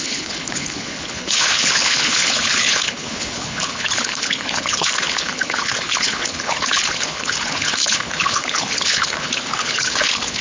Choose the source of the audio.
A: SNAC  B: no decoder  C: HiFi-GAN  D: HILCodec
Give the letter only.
D